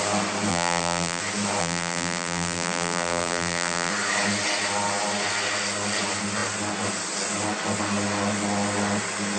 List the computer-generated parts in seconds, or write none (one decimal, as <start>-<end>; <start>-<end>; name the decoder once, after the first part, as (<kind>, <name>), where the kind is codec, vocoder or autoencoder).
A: 0.5-1.2 (vocoder, BigVGAN v2); 1.6-3.9